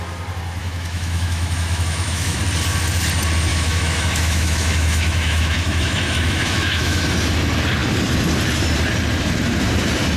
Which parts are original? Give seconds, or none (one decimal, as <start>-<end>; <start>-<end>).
0.0-0.6; 2.4-3.5; 7.0-10.2